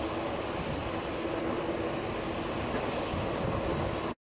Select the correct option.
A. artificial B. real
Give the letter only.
B